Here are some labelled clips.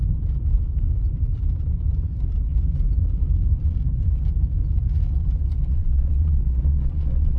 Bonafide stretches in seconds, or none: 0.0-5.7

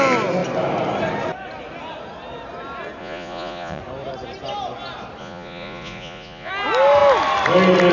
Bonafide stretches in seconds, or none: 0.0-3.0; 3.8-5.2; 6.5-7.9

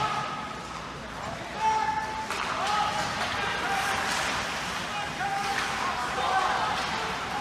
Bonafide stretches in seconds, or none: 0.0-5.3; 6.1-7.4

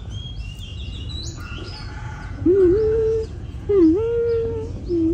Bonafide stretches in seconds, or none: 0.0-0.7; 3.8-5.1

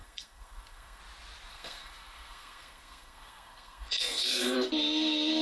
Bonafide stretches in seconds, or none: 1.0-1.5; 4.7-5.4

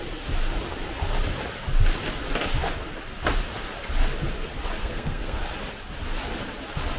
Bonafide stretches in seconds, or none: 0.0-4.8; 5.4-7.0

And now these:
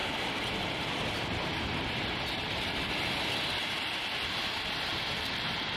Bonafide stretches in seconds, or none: 2.9-3.6

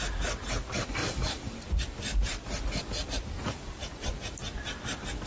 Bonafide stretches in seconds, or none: 0.0-1.0; 1.8-3.0; 4.1-5.3